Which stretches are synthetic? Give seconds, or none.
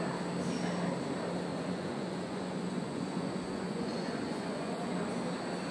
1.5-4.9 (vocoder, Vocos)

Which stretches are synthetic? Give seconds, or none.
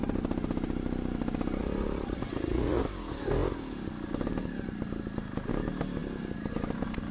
1.6-2.8 (vocoder, Vocos)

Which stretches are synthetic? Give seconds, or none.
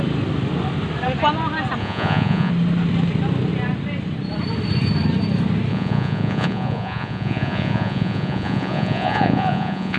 1.8-2.5 (vocoder, Vocos); 5.7-10.0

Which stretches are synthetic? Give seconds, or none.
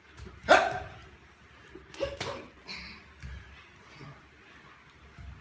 none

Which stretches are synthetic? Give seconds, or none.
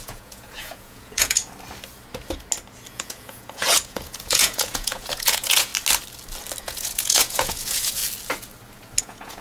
0.0-1.4 (vocoder, Vocos); 2.9-5.7; 6.6-8.0; 9.0-9.4